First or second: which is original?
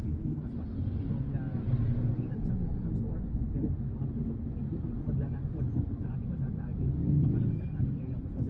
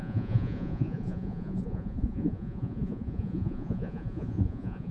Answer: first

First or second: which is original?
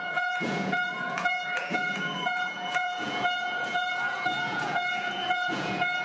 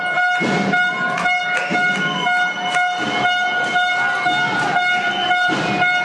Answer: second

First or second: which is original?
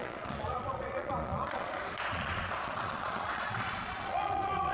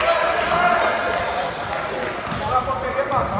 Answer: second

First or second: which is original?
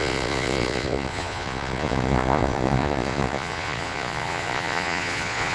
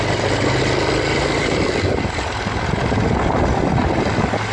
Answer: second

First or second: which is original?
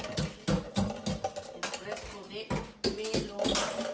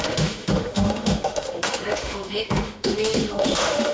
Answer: first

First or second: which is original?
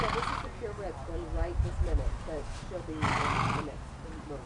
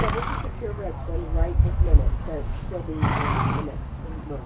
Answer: first